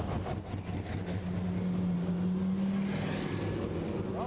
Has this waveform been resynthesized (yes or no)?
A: no